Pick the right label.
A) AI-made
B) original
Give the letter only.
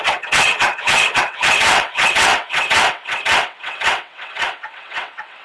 A